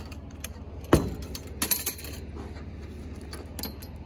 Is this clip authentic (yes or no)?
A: yes